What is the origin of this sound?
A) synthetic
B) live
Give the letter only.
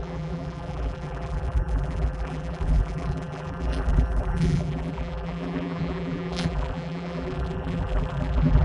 A